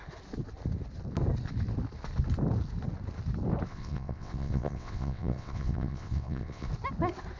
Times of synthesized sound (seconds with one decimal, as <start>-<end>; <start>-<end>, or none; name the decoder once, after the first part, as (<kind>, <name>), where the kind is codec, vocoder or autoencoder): 3.7-6.7 (vocoder, WaveNeXt)